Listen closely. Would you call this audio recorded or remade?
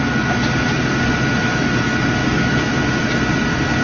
recorded